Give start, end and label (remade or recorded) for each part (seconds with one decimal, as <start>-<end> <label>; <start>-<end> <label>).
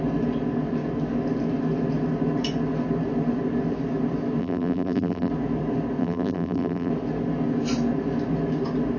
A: 0.0-4.4 recorded; 4.4-5.3 remade; 5.3-6.0 recorded; 6.0-6.9 remade; 6.9-9.0 recorded